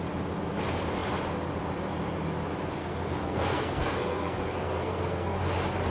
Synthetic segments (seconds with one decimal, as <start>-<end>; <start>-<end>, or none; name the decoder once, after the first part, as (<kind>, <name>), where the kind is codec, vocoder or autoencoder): 2.8-5.4 (codec, SNAC)